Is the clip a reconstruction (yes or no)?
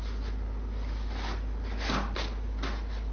no